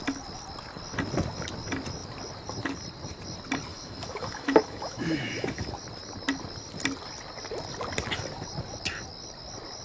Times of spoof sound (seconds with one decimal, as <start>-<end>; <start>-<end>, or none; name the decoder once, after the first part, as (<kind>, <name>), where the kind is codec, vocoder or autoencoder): 3.7-5.7 (autoencoder, DAC-VAE)